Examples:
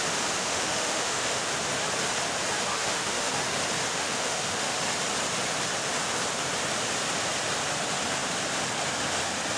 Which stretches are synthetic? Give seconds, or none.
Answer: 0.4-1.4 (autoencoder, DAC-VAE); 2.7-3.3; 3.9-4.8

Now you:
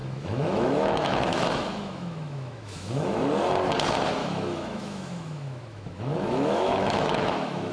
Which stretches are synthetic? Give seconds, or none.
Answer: 0.0-3.2 (autoencoder, DAC-VAE); 4.2-7.7

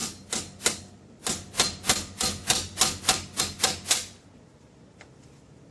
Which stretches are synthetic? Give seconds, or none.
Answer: none

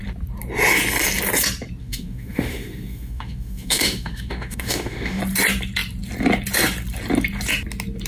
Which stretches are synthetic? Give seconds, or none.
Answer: 1.8-5.2 (autoencoder, DAC-VAE)

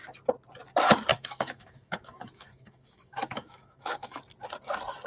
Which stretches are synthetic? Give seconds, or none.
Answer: 1.1-4.2 (autoencoder, DAC-VAE)